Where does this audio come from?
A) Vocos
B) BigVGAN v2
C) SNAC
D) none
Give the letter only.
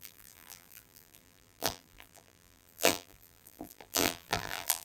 B